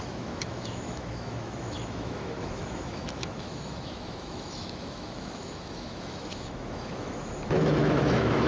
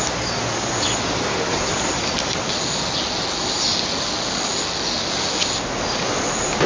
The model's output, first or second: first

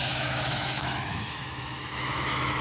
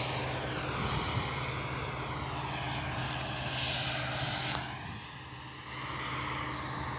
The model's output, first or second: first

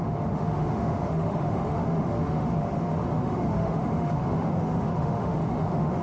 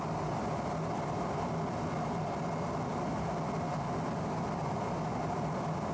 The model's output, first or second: first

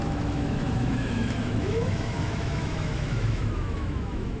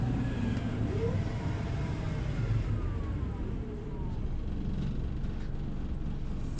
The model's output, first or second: first